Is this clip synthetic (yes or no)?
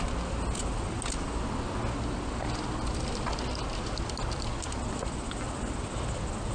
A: no